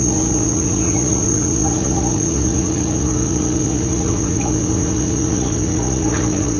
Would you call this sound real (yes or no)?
no